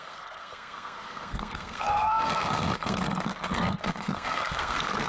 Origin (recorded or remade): remade